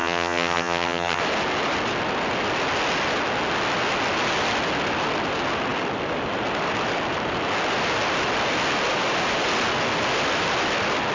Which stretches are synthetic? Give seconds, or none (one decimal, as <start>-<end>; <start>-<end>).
0.0-1.2